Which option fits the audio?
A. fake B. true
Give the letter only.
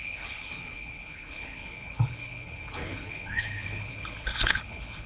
A